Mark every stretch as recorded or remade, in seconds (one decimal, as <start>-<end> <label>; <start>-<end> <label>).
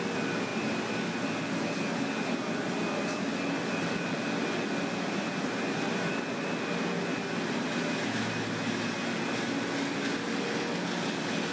0.0-11.5 recorded